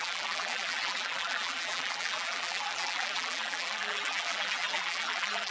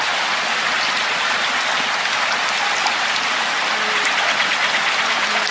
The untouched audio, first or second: second